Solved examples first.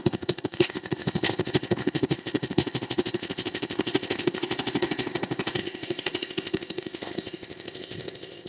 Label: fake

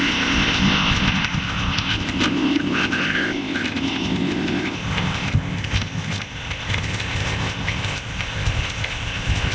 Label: fake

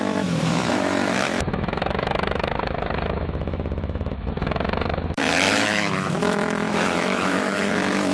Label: fake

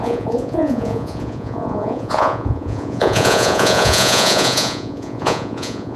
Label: fake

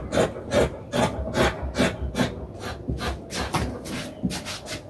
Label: real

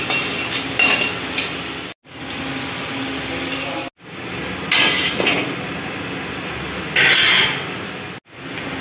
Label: real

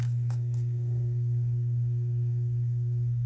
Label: fake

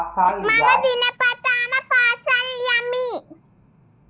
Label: real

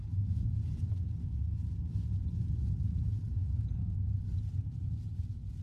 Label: fake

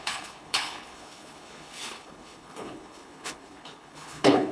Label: fake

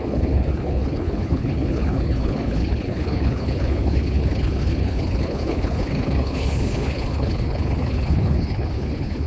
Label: fake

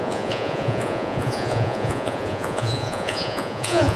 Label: fake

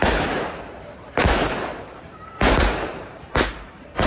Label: fake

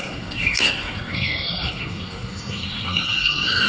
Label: fake